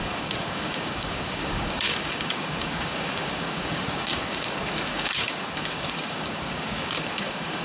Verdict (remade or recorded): remade